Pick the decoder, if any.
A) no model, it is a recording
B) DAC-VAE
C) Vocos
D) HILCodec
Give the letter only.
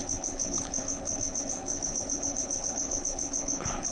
D